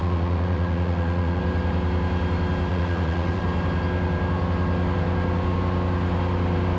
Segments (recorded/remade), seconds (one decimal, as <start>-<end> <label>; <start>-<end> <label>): 0.0-1.4 remade; 1.4-2.7 recorded; 2.7-3.4 remade; 3.4-6.8 recorded